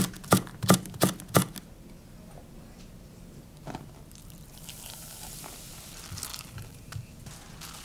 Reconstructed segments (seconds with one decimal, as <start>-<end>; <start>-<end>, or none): 4.2-5.5; 6.3-7.0